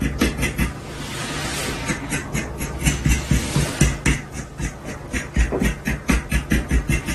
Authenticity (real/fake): real